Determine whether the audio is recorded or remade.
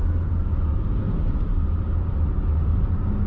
recorded